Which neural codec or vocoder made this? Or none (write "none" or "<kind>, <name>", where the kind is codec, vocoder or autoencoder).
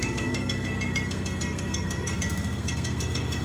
codec, SNAC